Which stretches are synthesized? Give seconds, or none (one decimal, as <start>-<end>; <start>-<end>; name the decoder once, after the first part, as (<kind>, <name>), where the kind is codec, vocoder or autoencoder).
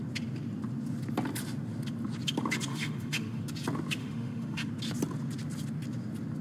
2.7-3.4 (autoencoder, DAC-VAE); 4.0-4.7